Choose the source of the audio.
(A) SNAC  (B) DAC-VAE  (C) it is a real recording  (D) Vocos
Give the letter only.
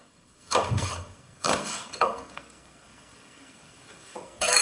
A